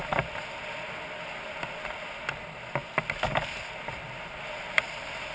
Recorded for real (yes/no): yes